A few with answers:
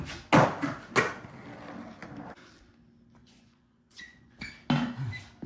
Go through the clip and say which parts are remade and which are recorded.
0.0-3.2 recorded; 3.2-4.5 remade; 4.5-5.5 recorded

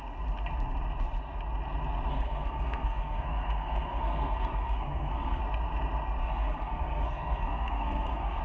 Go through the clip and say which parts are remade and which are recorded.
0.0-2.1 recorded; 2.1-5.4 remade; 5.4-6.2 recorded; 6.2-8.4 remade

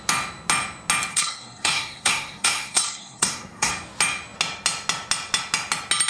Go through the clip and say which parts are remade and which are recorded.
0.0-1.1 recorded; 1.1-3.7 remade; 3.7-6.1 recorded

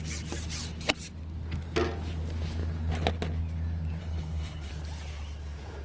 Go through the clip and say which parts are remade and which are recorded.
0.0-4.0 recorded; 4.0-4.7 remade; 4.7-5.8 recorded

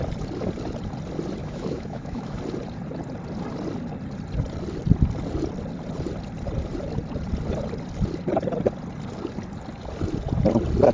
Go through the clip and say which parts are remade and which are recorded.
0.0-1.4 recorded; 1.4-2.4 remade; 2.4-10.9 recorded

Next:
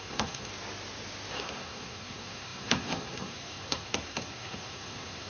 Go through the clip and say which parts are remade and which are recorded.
0.0-0.5 remade; 0.5-1.3 recorded; 1.3-5.3 remade

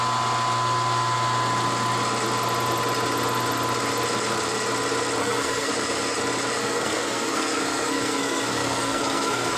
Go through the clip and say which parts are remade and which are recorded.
0.0-5.2 recorded; 5.2-5.7 remade; 5.7-6.6 recorded; 6.6-9.6 remade